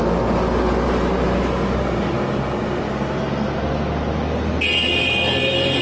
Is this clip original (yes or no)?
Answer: yes